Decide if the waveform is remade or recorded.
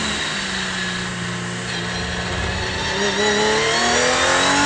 recorded